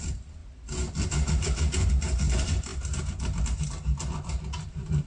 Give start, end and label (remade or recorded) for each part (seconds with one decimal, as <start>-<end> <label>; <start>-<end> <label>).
0.0-5.1 recorded